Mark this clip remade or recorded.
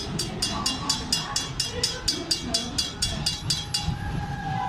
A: recorded